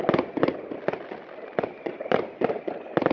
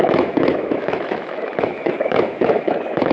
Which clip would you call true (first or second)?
first